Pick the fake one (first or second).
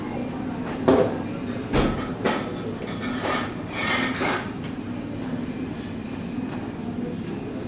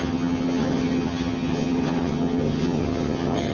second